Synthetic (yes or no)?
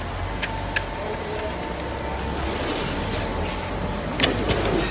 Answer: no